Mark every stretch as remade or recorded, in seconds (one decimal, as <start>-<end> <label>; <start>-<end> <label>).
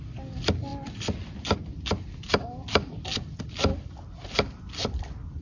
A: 0.0-5.4 recorded